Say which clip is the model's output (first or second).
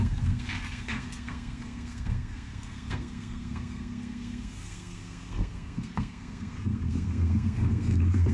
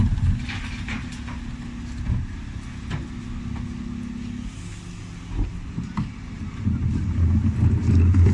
first